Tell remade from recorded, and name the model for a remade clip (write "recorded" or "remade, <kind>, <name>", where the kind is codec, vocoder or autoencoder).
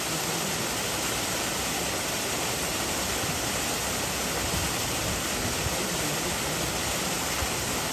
recorded